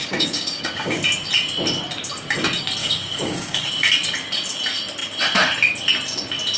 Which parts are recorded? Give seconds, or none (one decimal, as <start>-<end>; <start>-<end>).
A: 1.0-2.8; 3.7-6.6